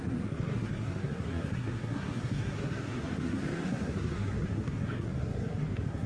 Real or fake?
fake